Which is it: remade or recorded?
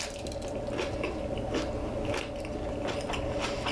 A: recorded